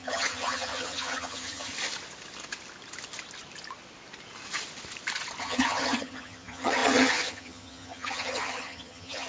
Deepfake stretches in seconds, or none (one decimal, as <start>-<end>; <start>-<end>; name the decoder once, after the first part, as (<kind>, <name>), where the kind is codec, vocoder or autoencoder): 0.0-1.7 (vocoder, HiFi-GAN); 5.4-9.3